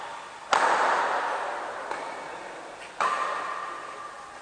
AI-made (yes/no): no